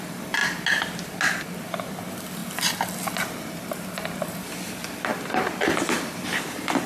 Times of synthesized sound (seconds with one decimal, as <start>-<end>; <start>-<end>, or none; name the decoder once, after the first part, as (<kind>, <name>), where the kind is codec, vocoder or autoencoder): 0.0-0.4 (vocoder, BigVGAN v2); 1.5-2.4; 3.4-6.9